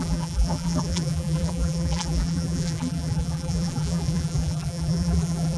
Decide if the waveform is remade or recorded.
remade